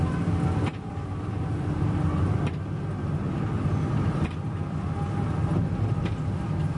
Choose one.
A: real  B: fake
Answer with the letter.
A